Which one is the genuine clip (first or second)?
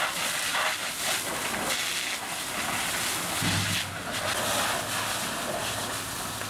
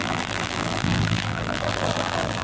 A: first